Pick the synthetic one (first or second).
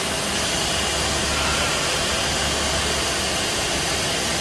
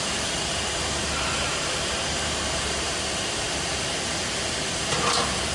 second